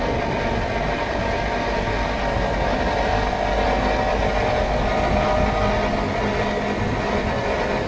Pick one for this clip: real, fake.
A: real